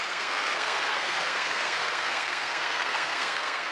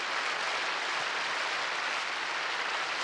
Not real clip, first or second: first